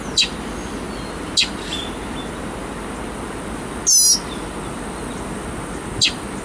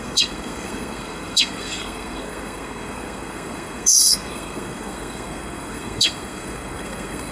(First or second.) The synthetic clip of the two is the second